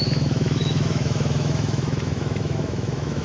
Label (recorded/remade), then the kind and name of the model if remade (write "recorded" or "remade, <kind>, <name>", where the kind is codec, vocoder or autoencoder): remade, autoencoder, DAC-VAE